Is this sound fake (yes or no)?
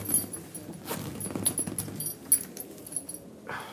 no